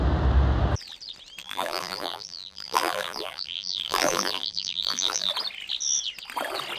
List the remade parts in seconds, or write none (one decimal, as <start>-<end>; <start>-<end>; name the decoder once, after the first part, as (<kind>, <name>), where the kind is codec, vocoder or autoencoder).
1.4-5.3 (vocoder, BigVGAN v2)